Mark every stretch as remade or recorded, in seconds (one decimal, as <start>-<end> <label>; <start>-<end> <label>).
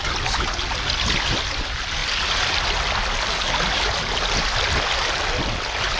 0.0-6.0 recorded